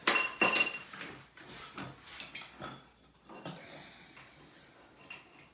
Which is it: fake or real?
real